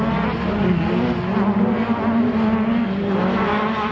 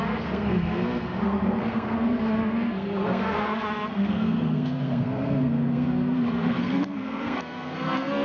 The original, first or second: first